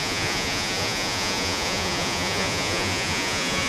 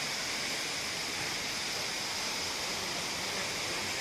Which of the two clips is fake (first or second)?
first